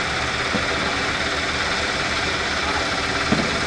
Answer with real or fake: fake